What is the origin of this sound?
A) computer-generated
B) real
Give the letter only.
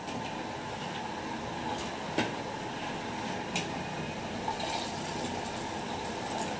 B